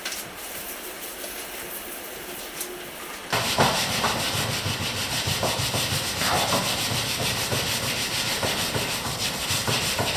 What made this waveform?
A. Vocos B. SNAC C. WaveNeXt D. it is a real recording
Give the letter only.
D